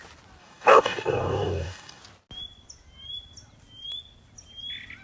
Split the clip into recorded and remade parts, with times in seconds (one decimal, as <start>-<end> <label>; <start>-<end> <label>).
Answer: 0.0-0.4 recorded; 0.4-2.0 remade; 2.0-5.0 recorded